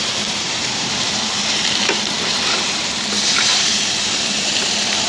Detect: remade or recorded remade